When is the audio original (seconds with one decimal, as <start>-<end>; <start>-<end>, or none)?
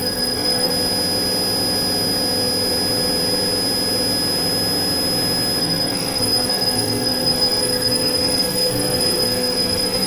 0.7-5.6